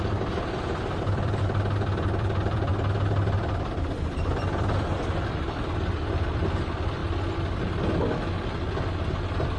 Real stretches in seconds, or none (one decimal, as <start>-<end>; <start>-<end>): 2.7-3.6; 7.0-9.2